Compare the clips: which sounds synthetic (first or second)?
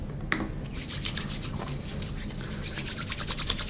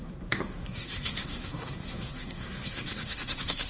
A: second